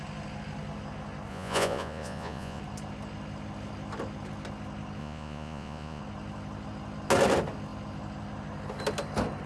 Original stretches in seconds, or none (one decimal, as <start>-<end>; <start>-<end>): 0.0-1.3; 2.6-5.0; 6.0-9.5